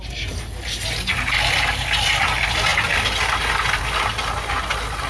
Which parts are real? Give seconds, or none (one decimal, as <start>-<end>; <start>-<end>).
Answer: 0.0-5.1